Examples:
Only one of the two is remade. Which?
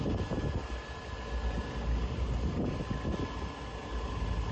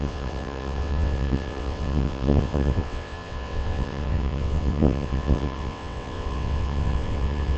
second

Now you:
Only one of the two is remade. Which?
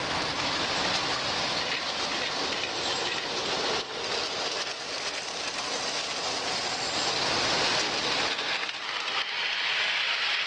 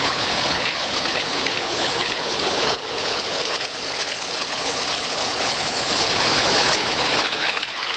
second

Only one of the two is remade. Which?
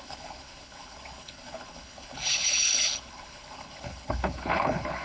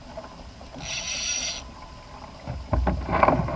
first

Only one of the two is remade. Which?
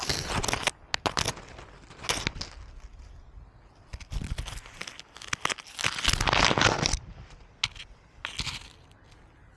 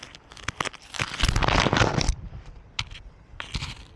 second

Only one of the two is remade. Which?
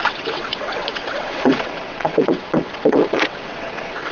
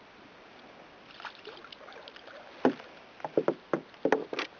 first